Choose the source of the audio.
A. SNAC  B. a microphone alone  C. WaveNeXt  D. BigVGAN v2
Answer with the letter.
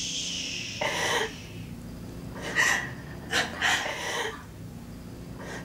B